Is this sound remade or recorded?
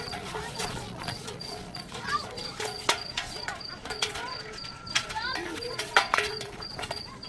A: remade